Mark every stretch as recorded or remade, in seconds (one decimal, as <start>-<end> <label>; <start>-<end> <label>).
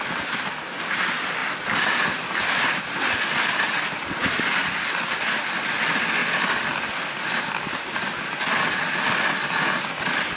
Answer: 0.0-10.4 recorded